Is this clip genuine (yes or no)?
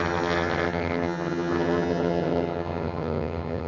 no